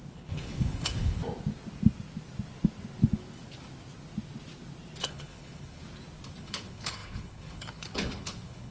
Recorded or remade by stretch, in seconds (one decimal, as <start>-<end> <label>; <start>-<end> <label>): 0.0-1.2 remade; 1.2-5.0 recorded; 5.0-5.8 remade; 5.8-6.4 recorded; 6.4-8.7 remade